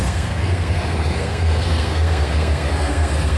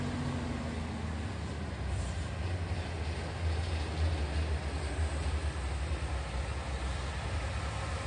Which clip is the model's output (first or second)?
first